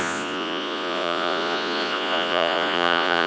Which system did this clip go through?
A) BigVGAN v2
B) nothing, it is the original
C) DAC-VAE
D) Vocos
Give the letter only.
D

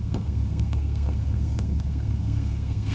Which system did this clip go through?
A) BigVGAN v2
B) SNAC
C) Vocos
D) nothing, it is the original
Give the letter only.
B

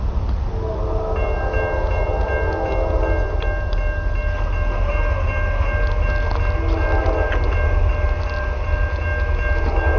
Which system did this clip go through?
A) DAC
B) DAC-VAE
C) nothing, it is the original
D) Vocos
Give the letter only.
C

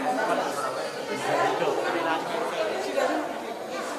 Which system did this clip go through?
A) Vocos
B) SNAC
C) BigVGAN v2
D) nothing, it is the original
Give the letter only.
D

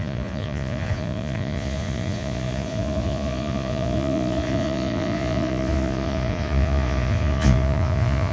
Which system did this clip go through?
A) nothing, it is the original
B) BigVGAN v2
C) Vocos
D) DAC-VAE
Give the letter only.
C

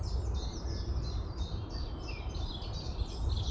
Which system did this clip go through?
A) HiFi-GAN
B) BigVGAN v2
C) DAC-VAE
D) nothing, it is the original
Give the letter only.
D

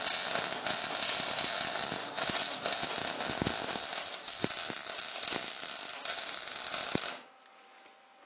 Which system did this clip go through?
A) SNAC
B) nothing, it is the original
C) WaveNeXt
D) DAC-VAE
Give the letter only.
B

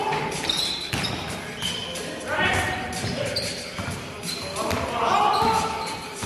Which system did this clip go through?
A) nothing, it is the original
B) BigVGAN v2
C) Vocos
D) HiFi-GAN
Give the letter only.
B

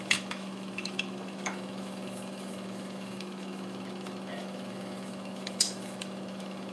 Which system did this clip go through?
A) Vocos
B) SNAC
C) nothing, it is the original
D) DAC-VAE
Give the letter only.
D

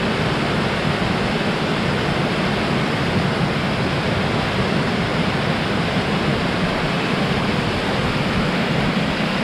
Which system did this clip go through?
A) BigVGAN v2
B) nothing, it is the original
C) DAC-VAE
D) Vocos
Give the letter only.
B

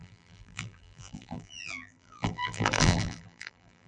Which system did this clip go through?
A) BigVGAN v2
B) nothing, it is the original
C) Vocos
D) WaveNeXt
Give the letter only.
A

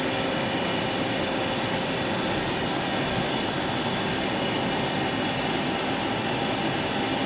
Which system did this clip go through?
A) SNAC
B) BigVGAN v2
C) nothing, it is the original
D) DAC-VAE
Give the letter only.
C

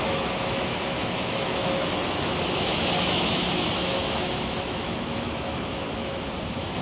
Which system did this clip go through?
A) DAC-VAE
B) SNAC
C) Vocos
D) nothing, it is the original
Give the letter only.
A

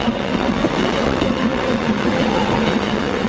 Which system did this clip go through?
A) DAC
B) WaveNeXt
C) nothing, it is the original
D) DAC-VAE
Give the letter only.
B